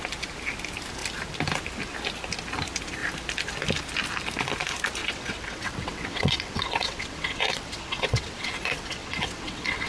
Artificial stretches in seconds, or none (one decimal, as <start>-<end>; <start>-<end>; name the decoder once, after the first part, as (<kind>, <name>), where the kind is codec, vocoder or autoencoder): 5.0-9.9 (vocoder, WaveNeXt)